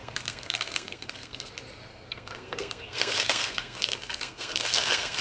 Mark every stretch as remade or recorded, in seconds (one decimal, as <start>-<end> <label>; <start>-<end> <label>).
0.0-1.5 remade; 1.5-1.9 recorded; 1.9-5.2 remade